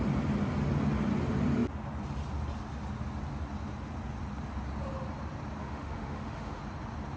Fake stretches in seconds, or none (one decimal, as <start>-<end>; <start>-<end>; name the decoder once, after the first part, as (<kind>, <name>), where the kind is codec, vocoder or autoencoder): 5.6-6.6 (autoencoder, DAC-VAE)